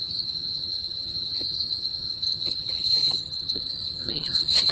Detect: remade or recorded remade